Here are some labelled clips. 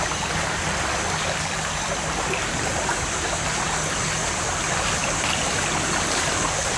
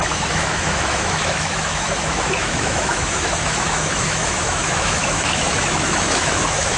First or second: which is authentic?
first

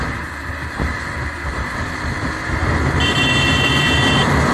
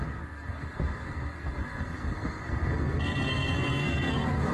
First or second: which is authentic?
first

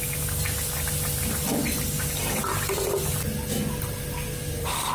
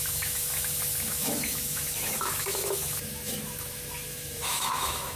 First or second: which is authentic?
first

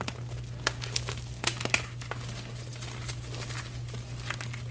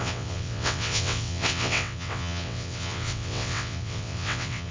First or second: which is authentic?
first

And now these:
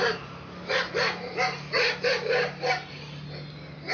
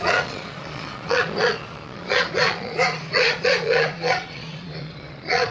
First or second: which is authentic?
first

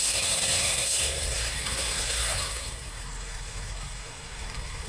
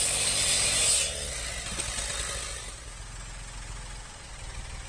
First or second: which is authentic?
second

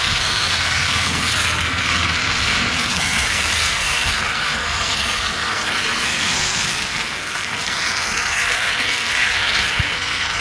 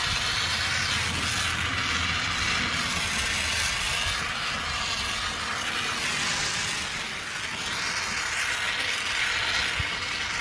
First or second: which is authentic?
second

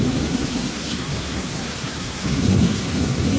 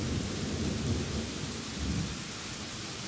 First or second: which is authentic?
second